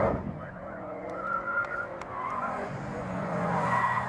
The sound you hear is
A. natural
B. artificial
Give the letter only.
B